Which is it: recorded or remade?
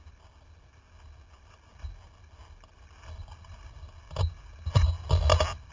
recorded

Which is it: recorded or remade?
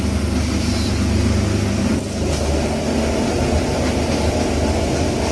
recorded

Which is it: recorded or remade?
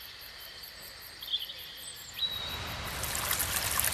recorded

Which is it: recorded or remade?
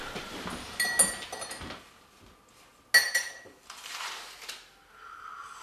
recorded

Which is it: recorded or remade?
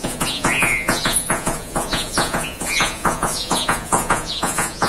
remade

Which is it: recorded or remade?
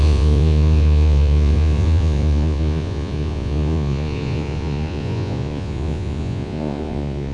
remade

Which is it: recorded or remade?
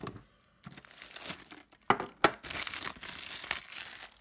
recorded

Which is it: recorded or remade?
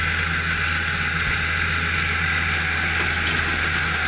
recorded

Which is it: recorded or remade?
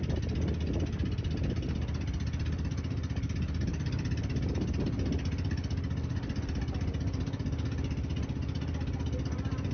recorded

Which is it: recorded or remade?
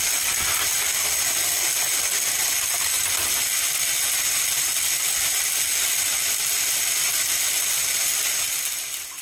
recorded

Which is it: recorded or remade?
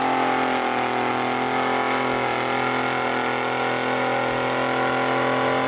recorded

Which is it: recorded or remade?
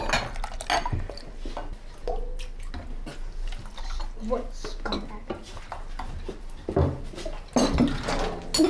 recorded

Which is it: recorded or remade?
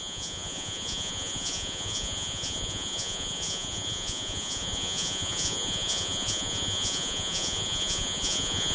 remade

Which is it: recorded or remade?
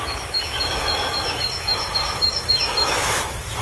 remade